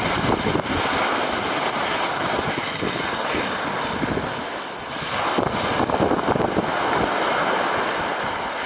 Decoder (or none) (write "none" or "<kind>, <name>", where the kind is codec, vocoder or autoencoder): none